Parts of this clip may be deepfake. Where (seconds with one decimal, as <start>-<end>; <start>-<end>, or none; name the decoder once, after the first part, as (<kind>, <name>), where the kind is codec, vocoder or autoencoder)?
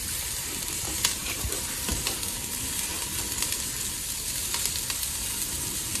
1.2-1.9 (vocoder, BigVGAN v2)